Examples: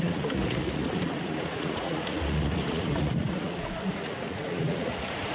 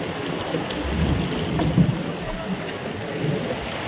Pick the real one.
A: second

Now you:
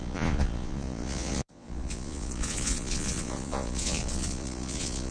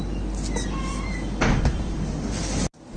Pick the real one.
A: second